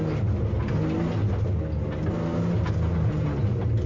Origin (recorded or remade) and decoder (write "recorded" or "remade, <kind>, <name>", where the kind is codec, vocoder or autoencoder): recorded